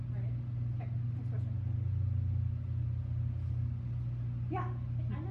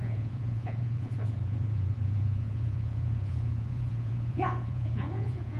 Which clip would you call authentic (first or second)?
first